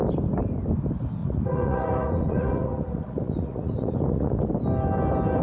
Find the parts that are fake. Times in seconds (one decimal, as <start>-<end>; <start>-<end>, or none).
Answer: 1.2-4.4